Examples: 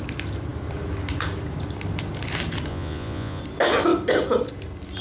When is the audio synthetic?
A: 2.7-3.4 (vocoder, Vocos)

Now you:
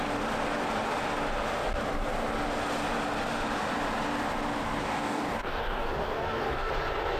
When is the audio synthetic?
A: 4.8-6.7 (codec, DAC)

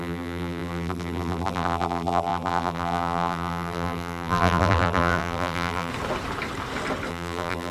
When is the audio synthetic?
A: 0.0-5.9 (vocoder, BigVGAN v2); 7.1-7.7

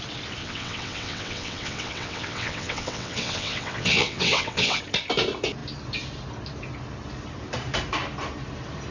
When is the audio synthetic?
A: 0.4-4.8 (vocoder, WaveNeXt)